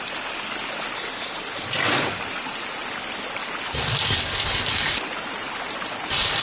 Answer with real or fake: real